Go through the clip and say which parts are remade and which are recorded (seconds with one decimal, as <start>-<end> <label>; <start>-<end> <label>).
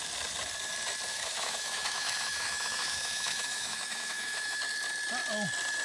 0.0-1.1 recorded; 1.1-4.6 remade; 4.6-5.8 recorded